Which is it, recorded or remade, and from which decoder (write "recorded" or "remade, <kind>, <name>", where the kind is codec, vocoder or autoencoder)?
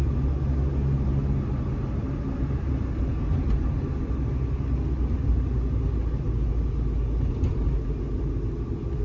recorded